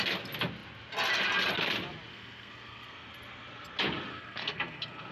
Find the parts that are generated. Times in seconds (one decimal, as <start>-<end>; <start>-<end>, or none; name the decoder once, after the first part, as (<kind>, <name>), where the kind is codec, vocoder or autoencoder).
2.1-3.1 (codec, SNAC); 4.1-5.1